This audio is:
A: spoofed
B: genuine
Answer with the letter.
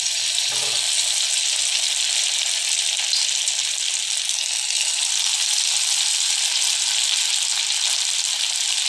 B